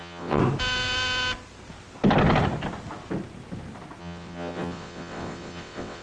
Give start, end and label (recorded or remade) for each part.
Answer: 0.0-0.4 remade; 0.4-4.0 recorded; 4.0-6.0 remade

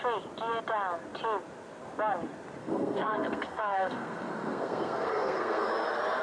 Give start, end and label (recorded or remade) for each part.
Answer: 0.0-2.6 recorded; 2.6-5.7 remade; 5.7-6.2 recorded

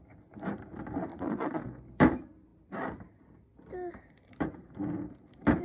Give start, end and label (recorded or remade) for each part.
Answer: 0.0-1.1 recorded; 1.1-1.6 remade; 1.6-5.6 recorded

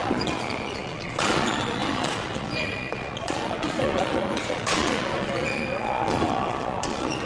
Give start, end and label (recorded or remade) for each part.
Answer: 0.0-7.3 remade

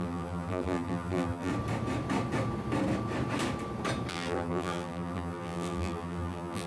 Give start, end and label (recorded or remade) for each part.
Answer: 0.0-1.5 remade; 1.5-4.1 recorded; 4.1-6.7 remade

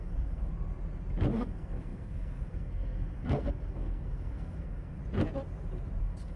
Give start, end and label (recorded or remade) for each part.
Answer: 0.0-0.5 remade; 0.5-1.3 recorded; 1.3-5.0 remade; 5.0-6.0 recorded; 6.0-6.4 remade

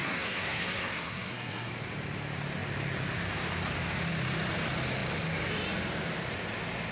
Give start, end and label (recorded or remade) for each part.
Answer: 0.0-1.7 remade; 1.7-6.9 recorded